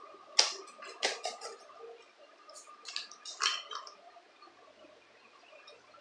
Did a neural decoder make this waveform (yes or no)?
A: no